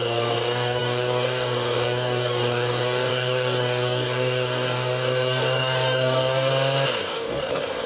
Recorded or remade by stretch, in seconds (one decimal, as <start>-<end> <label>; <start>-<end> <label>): 0.0-6.5 remade; 6.5-7.0 recorded; 7.0-7.9 remade